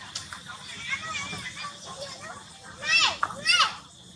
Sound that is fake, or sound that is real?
real